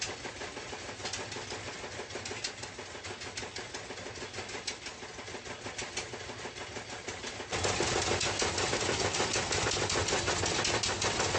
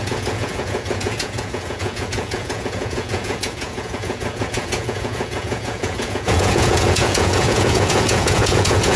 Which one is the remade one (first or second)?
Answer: second